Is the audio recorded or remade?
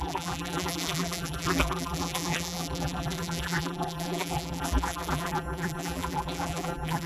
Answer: remade